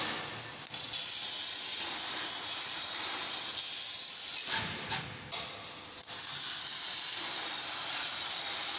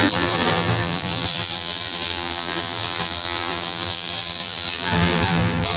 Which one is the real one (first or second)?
first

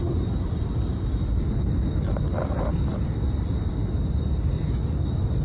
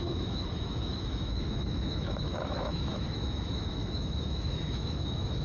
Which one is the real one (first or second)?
first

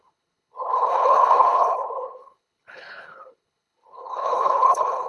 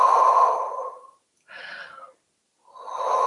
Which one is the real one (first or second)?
second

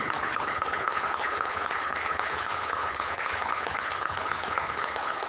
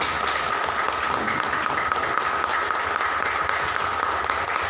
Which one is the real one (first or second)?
second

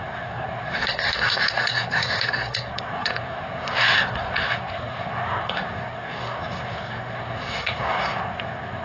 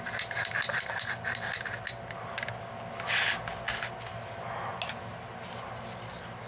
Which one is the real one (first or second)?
second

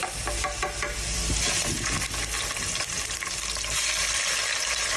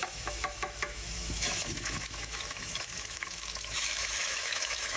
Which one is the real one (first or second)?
first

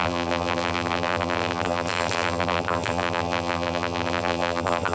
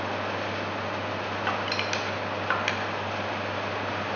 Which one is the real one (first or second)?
second